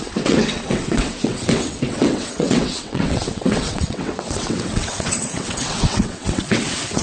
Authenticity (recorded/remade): remade